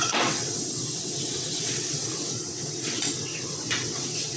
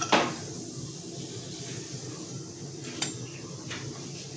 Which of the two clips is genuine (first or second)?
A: second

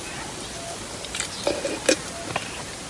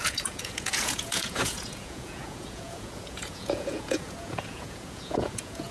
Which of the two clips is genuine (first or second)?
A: first